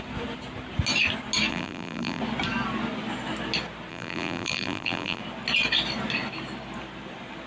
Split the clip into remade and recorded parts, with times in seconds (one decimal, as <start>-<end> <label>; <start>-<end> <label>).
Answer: 0.0-1.5 recorded; 1.5-2.2 remade; 2.2-3.9 recorded; 3.9-5.2 remade; 5.2-7.5 recorded